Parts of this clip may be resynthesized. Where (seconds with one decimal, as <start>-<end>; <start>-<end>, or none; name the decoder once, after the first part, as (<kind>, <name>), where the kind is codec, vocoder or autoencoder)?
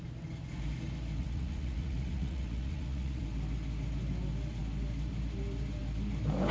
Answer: 1.2-3.2 (vocoder, Vocos)